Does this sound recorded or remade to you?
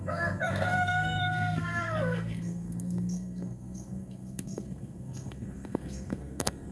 remade